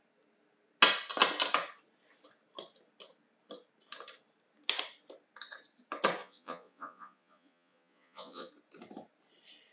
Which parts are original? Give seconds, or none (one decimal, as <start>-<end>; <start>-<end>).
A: 0.0-6.2; 8.5-9.7